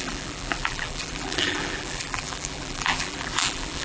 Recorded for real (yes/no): no